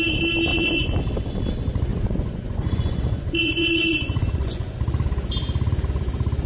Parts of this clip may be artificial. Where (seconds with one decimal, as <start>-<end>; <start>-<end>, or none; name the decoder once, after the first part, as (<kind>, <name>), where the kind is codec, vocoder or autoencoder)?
0.5-1.0 (vocoder, Vocos); 1.9-4.8